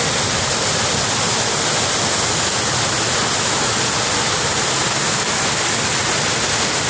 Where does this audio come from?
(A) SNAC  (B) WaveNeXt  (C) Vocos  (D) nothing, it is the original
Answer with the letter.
D